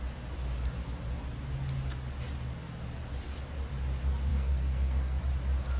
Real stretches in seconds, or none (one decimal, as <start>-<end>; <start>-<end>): 0.0-4.3; 5.2-5.8